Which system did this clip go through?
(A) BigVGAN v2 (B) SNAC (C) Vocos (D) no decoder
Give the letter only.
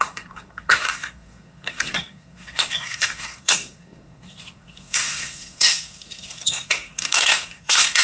B